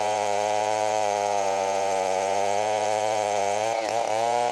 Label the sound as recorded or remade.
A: remade